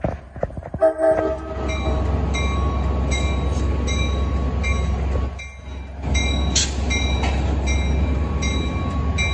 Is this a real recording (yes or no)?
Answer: yes